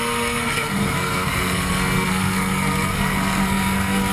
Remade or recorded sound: remade